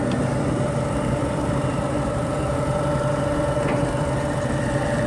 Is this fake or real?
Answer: fake